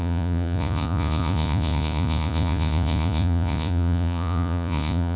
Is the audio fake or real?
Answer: fake